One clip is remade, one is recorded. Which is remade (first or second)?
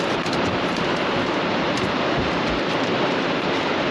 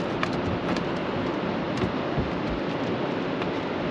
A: first